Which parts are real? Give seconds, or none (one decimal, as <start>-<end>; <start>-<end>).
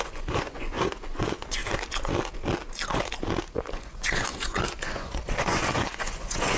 1.6-3.6